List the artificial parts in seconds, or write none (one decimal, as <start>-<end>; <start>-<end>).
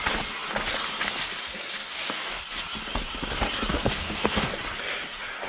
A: 1.8-2.4; 3.7-4.5